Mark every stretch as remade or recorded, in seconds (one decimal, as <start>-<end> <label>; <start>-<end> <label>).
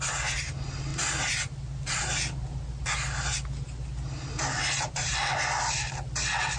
0.0-6.6 recorded